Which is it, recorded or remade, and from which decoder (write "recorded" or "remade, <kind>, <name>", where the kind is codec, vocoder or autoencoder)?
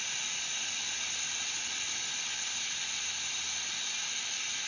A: recorded